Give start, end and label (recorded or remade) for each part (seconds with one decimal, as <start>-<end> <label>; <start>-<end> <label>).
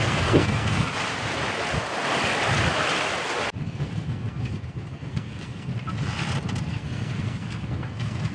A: 0.0-0.9 remade; 0.9-3.6 recorded; 3.6-5.7 remade; 5.7-6.6 recorded; 6.6-8.3 remade